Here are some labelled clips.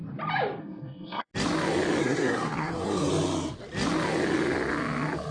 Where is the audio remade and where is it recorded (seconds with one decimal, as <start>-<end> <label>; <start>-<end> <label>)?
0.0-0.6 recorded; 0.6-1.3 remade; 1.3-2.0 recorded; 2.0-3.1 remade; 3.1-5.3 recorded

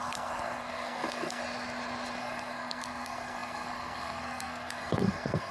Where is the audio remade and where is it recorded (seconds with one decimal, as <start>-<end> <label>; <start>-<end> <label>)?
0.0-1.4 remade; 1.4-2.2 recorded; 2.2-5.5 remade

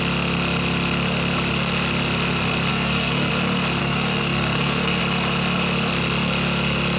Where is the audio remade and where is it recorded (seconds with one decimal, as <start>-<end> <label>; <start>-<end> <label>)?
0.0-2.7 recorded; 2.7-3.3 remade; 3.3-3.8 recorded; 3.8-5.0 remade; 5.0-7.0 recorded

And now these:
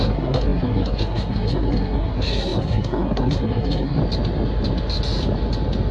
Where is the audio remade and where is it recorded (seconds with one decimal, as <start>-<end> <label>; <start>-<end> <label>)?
0.0-4.0 remade; 4.0-5.9 recorded

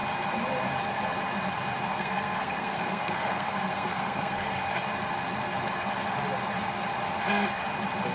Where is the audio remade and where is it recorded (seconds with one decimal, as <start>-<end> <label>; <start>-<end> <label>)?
0.0-1.9 recorded; 1.9-4.5 remade; 4.5-8.1 recorded